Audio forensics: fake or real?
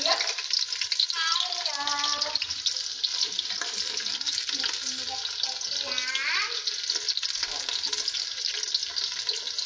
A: real